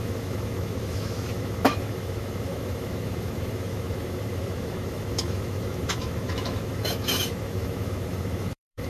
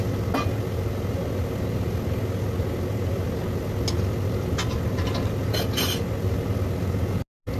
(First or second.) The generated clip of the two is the first